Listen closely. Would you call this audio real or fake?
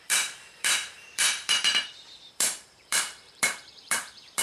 fake